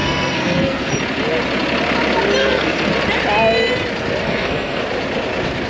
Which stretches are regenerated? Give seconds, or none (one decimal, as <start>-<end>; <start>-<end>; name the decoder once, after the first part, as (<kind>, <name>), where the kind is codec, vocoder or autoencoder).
0.0-0.9 (codec, SNAC); 2.4-2.9; 4.2-4.8